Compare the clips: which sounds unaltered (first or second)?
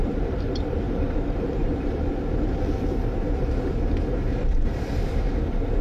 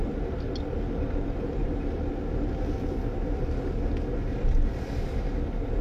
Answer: second